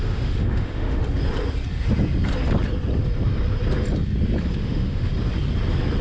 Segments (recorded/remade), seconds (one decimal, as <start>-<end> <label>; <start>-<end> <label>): 0.0-1.0 remade; 1.0-4.6 recorded; 4.6-5.1 remade; 5.1-6.0 recorded